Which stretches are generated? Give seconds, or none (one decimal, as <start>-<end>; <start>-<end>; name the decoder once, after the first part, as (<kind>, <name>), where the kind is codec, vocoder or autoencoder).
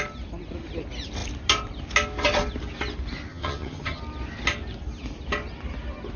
3.3-4.0 (vocoder, HiFi-GAN)